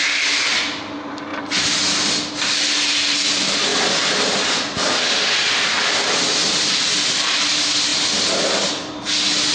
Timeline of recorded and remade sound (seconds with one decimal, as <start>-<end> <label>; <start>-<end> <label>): 0.0-1.3 remade; 1.3-2.3 recorded; 2.3-7.9 remade; 7.9-8.9 recorded; 8.9-9.5 remade